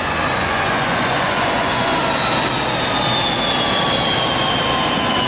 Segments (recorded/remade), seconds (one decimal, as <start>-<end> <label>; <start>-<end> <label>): 0.0-2.0 remade; 2.0-5.3 recorded

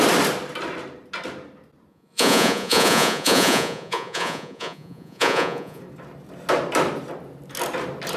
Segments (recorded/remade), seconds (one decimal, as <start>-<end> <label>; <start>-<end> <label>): 0.0-1.9 recorded; 1.9-5.8 remade; 5.8-8.2 recorded

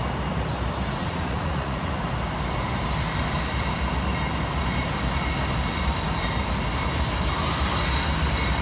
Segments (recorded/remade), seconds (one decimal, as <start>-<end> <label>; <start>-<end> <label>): 0.0-1.0 recorded; 1.0-1.9 remade; 1.9-8.6 recorded